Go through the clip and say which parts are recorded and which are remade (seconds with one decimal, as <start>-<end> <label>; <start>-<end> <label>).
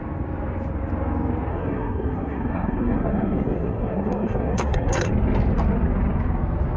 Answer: 0.0-1.5 recorded; 1.5-5.1 remade; 5.1-6.8 recorded